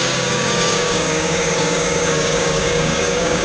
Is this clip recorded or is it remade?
remade